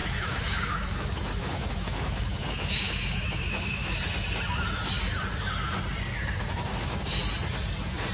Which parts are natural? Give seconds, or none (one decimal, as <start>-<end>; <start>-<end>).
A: 4.0-8.1